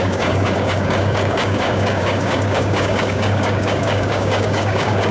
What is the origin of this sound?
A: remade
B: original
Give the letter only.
A